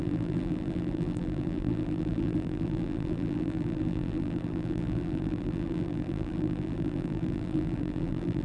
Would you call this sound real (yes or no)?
no